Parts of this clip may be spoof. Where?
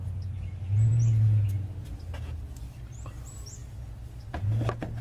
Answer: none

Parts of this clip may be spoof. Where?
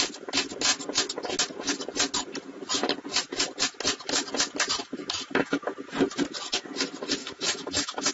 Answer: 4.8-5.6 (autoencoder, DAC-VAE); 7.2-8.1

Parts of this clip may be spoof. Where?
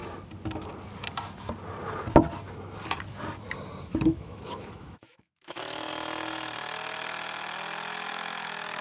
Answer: 3.8-5.9 (autoencoder, DAC-VAE); 8.1-8.8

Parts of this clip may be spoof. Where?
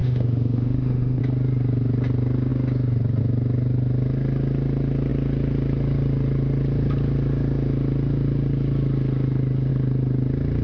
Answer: 0.0-1.2 (autoencoder, DAC-VAE)